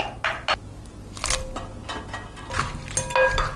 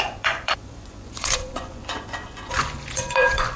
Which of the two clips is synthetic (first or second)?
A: second